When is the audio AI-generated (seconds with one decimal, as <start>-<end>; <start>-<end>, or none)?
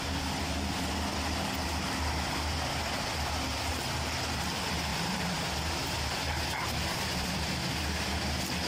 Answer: 4.9-6.7